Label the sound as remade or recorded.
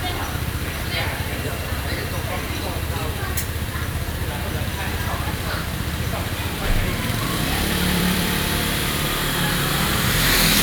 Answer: remade